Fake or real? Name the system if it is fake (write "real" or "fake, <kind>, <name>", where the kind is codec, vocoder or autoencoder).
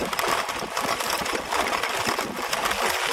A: real